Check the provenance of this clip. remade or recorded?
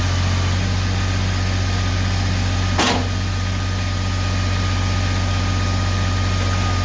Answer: recorded